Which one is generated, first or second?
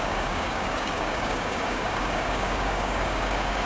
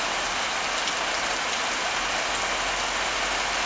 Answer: first